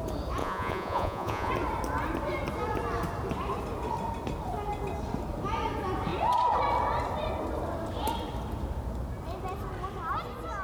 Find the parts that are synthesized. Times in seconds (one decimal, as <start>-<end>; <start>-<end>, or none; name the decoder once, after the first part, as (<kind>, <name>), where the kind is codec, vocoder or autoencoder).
0.4-1.5 (vocoder, Vocos)